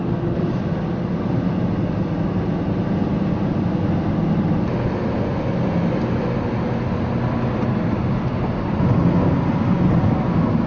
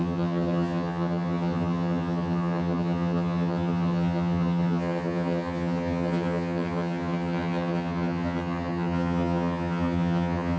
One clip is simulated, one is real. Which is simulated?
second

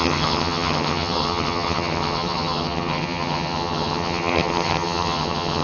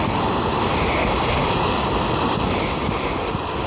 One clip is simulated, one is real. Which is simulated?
first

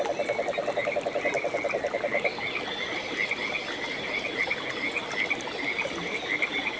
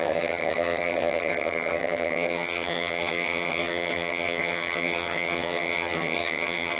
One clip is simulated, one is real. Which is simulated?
second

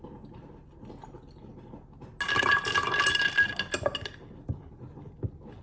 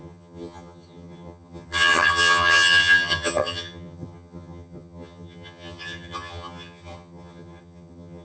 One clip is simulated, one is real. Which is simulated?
second